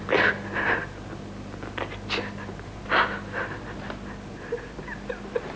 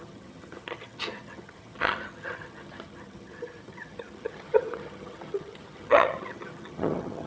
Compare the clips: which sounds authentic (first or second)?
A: first